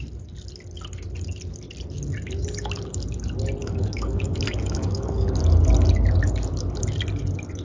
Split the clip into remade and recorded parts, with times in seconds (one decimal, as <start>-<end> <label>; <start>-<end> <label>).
0.0-3.6 recorded; 3.6-5.4 remade; 5.4-7.6 recorded